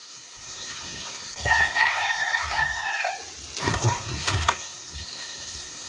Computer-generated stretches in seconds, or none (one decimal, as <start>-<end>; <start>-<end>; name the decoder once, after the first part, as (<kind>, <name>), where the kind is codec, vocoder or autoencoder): 0.0-3.1 (codec, SNAC); 3.6-5.9